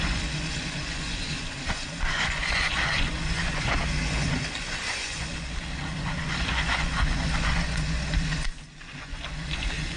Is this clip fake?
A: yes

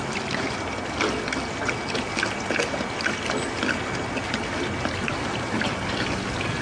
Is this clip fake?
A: no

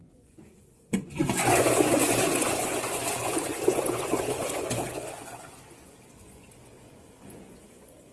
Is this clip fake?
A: yes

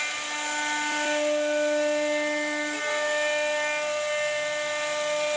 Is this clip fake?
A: no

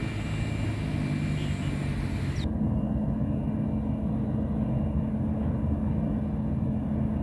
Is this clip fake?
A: no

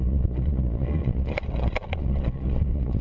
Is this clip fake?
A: yes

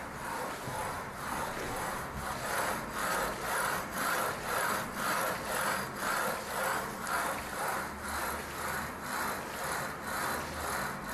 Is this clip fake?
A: no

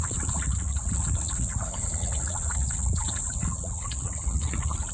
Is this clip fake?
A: yes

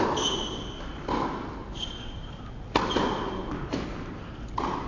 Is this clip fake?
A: no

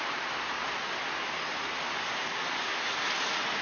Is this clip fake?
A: no